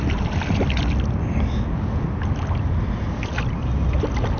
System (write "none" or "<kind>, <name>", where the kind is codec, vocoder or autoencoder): none